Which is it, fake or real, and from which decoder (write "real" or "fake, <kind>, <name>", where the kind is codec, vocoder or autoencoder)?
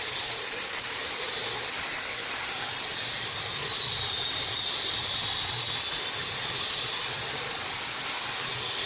real